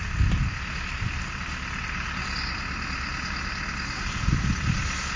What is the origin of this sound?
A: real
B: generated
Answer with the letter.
A